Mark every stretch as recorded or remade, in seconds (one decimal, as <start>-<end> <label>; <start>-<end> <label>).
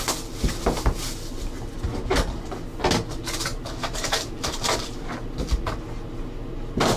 0.0-3.5 recorded; 3.5-4.9 remade; 4.9-7.0 recorded